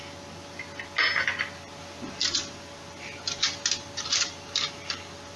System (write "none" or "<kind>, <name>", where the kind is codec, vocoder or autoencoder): none